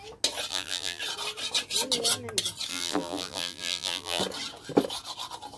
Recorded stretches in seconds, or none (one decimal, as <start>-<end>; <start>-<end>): 0.0-0.5; 1.0-2.7; 4.2-5.6

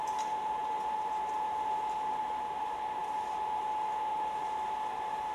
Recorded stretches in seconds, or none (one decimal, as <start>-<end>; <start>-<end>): 0.0-5.3